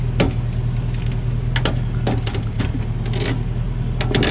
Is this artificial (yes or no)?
no